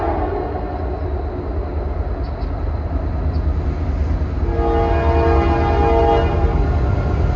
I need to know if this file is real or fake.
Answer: real